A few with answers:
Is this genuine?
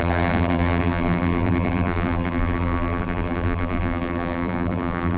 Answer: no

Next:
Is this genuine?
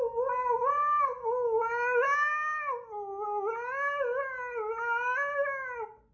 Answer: yes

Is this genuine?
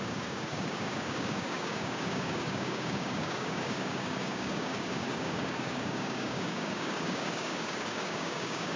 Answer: no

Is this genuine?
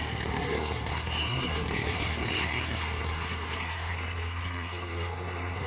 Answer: no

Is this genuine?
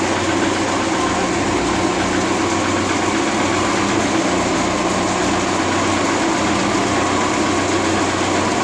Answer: yes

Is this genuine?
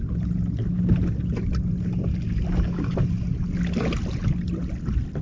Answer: yes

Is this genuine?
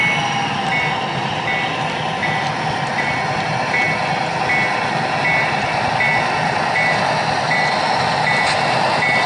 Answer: yes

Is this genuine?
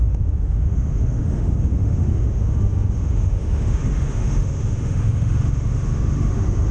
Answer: no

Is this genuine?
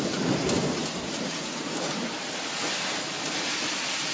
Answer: yes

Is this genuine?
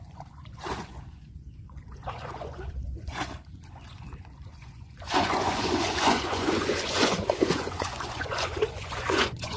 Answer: no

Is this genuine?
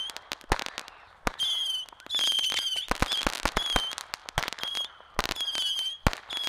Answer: yes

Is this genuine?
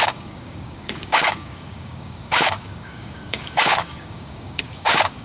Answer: no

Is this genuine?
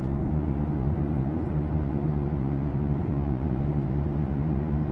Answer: no